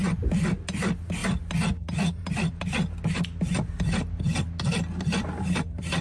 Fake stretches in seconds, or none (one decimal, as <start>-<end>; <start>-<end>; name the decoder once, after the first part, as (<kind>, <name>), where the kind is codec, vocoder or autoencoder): none